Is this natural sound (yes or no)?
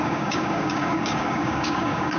no